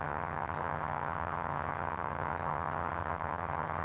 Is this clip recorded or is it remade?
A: remade